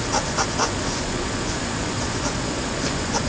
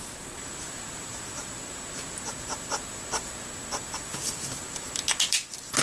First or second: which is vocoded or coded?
first